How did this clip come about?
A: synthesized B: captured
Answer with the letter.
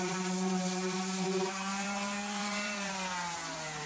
A